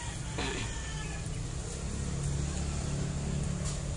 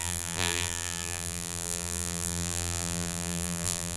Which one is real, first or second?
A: first